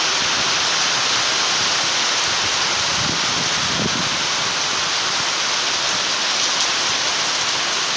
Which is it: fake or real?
real